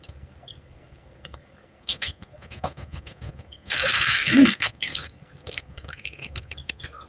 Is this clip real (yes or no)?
no